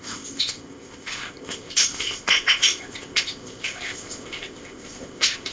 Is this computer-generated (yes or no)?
yes